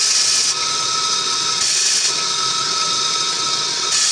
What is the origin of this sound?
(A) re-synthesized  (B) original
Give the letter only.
A